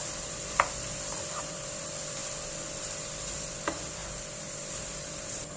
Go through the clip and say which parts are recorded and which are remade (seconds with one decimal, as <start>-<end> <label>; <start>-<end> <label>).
0.0-2.2 remade; 2.2-3.3 recorded; 3.3-5.6 remade